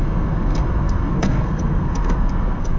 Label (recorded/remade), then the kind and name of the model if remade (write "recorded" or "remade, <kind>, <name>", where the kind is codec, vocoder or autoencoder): remade, codec, SNAC